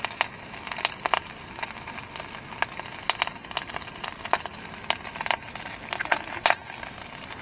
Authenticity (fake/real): real